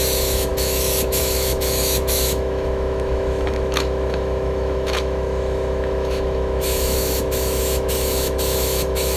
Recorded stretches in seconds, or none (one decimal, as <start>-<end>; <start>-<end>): none